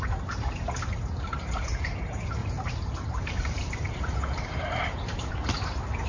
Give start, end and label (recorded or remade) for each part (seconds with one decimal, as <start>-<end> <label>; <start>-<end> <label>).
0.0-0.9 recorded; 0.9-2.0 remade; 2.0-2.4 recorded; 2.4-5.3 remade; 5.3-6.1 recorded